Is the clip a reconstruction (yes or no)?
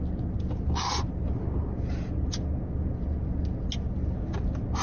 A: no